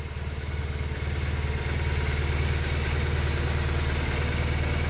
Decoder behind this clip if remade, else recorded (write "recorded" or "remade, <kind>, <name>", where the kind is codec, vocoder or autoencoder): recorded